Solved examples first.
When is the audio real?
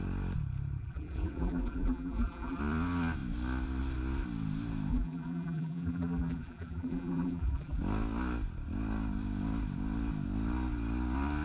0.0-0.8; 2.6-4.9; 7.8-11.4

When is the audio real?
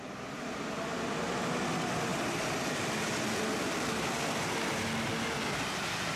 0.0-6.2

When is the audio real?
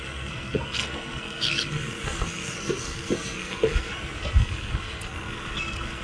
none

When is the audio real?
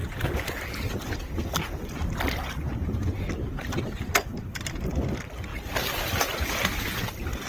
0.0-7.5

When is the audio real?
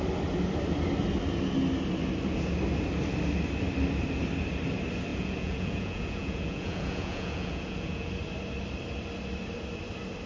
0.0-5.1; 8.1-10.3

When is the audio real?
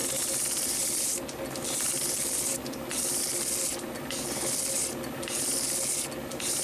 0.0-6.6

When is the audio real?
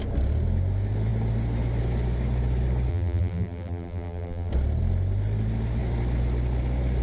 0.0-2.9; 4.5-7.0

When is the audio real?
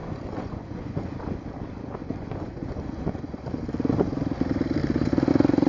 1.1-2.0; 3.6-5.7